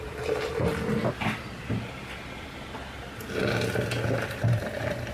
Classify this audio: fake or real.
real